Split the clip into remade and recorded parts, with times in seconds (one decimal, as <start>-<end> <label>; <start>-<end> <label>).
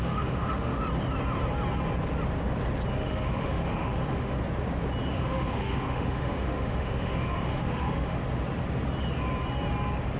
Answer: 0.0-0.7 remade; 0.7-2.9 recorded; 2.9-4.4 remade; 4.4-5.1 recorded; 5.1-8.2 remade; 8.2-10.2 recorded